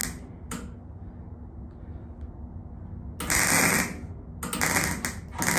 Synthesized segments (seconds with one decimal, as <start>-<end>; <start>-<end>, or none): none